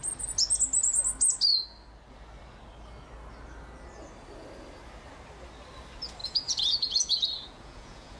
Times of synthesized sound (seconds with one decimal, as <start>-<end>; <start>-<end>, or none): 6.2-8.2

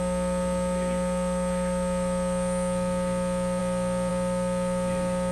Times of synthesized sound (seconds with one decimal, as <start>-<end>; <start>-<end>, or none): none

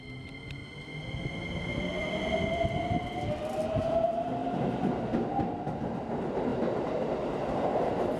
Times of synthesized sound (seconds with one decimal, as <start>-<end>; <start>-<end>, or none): none

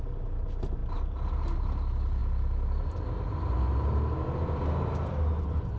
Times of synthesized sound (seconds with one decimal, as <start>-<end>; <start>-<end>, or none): none